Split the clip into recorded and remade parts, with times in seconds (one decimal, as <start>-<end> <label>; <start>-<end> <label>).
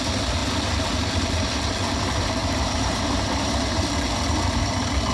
0.0-2.4 recorded; 2.4-3.8 remade; 3.8-5.1 recorded